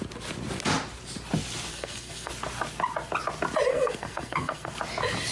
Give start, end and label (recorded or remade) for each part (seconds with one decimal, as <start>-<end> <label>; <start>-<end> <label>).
0.0-1.7 recorded; 1.7-2.3 remade; 2.3-3.7 recorded; 3.7-4.7 remade; 4.7-5.3 recorded